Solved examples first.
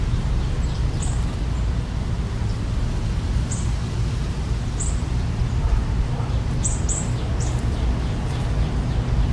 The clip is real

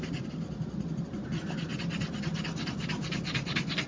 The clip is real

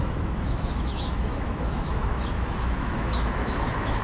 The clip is fake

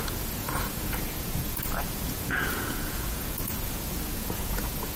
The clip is fake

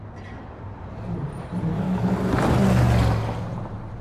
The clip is real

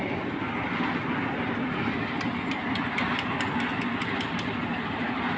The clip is real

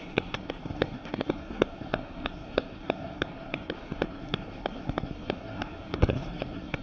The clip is fake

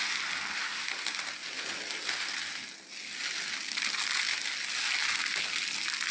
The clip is real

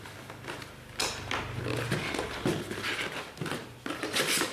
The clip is real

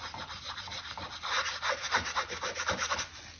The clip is real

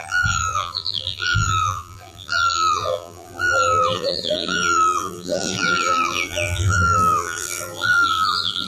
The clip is fake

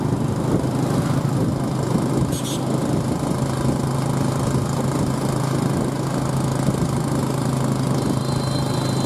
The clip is real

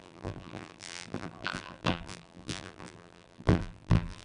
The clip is fake